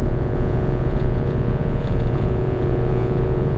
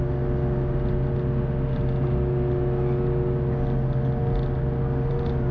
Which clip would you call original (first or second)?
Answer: second